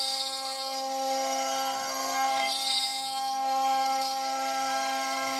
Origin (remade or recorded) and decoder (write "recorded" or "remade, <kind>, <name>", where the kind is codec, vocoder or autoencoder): remade, codec, SNAC